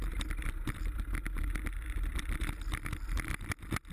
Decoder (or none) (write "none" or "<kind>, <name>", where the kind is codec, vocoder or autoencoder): none